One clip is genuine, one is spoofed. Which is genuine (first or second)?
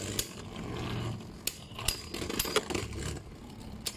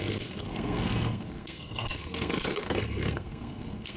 first